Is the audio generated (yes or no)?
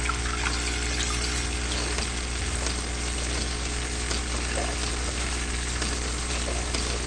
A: no